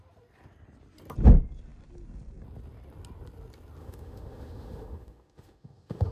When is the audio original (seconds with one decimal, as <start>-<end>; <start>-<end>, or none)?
0.0-3.8